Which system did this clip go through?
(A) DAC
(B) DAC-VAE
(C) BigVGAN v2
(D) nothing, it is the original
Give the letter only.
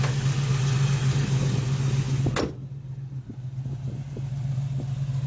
D